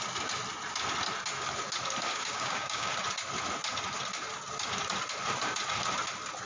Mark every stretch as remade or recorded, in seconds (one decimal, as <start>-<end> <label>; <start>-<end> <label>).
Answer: 0.0-2.1 recorded; 2.1-2.9 remade; 2.9-6.5 recorded